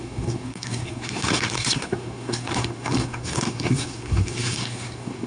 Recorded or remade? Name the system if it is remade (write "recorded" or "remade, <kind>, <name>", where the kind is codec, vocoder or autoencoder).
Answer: remade, codec, SNAC